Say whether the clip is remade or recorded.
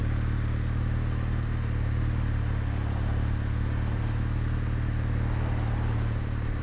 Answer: recorded